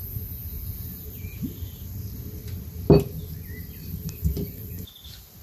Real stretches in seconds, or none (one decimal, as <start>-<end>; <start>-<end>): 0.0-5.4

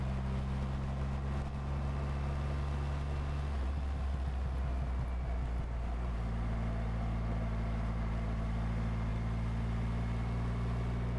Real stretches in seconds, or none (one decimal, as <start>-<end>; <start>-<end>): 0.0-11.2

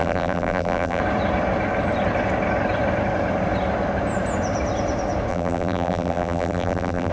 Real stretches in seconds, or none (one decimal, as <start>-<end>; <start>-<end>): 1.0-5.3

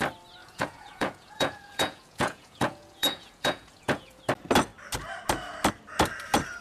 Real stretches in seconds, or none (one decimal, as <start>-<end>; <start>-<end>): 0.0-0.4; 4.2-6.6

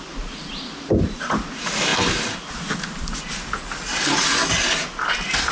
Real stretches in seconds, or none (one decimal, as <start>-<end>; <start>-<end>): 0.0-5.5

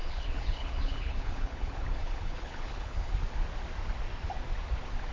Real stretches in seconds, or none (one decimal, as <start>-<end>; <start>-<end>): 3.1-5.1